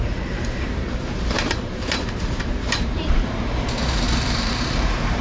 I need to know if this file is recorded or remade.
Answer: remade